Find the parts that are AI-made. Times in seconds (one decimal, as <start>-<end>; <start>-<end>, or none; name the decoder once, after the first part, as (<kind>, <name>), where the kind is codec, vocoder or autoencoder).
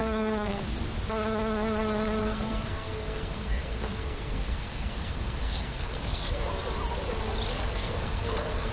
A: 0.0-0.6 (codec, SNAC); 2.2-6.5; 7.5-8.7